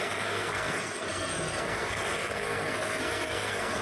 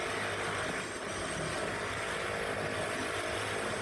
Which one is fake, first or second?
first